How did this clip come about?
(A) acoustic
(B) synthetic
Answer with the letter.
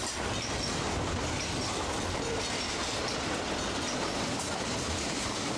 A